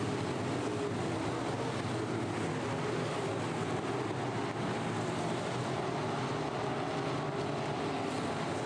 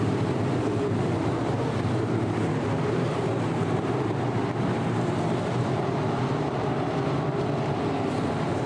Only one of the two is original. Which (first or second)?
first